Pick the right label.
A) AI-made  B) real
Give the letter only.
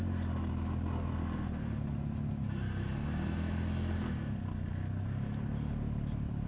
B